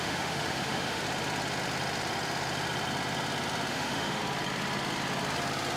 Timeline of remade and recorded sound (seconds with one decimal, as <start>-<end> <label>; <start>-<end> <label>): 0.0-1.0 remade; 1.0-3.7 recorded; 3.7-4.2 remade; 4.2-5.8 recorded